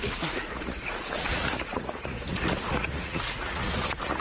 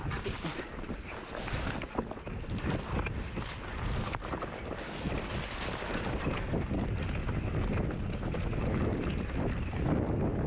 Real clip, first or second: second